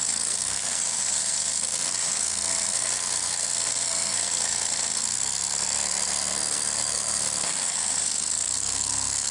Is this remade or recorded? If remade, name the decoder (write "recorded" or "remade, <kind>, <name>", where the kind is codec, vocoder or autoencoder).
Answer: remade, codec, SNAC